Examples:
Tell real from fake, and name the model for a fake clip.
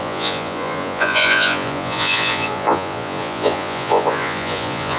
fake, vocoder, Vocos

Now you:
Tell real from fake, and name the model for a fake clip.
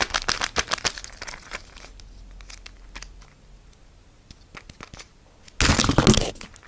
real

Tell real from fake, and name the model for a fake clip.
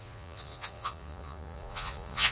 fake, vocoder, Vocos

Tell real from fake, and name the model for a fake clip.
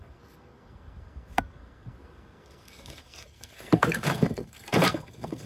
fake, codec, SNAC